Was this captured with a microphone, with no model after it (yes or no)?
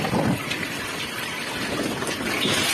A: yes